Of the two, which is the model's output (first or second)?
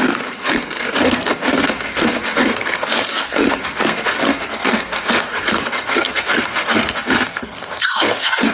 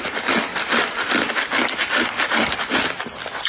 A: first